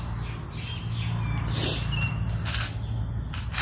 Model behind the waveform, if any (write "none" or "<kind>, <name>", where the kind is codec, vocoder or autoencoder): none